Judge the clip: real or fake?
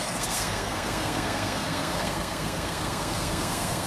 fake